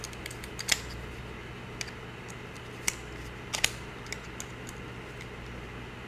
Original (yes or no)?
yes